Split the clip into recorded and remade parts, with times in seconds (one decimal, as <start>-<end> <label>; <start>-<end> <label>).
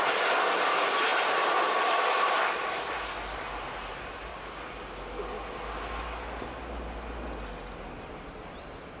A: 0.0-9.0 recorded